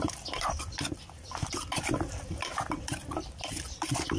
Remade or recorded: recorded